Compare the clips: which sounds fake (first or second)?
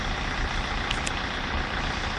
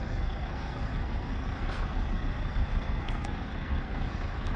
second